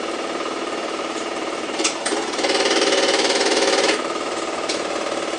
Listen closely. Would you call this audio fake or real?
fake